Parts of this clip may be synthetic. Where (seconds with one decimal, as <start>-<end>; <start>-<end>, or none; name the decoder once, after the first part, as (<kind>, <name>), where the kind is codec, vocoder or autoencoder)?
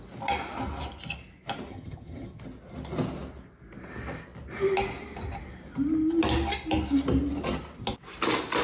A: 1.7-2.4 (vocoder, HiFi-GAN)